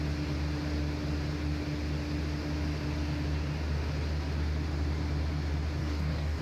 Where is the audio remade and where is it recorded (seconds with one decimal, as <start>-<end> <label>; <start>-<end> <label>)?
0.0-5.8 recorded; 5.8-6.4 remade